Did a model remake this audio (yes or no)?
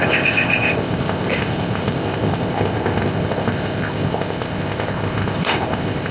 yes